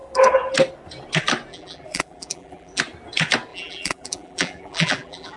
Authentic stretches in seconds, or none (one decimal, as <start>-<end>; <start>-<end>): 0.0-1.5; 2.8-3.5

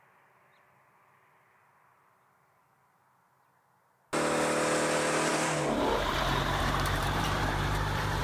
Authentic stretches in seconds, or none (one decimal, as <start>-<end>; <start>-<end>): 0.0-5.3

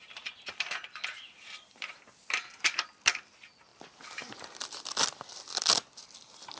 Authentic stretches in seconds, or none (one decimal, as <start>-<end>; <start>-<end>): none

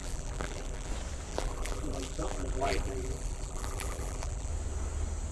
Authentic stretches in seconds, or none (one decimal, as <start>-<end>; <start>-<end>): 0.9-1.3; 4.5-5.3

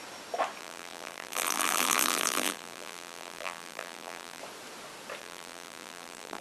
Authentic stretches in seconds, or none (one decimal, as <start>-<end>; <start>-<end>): 0.0-0.6; 4.4-5.2

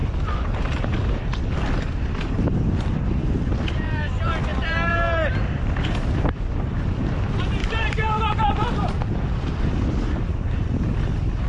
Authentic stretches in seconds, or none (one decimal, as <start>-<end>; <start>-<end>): 0.0-7.6; 8.2-11.5